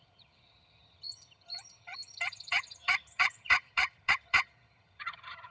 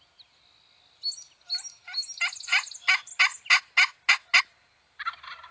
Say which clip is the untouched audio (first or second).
second